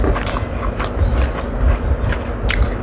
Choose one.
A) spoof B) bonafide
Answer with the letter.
B